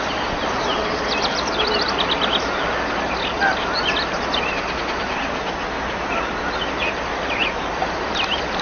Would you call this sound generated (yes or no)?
yes